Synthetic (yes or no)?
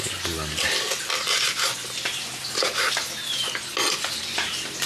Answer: no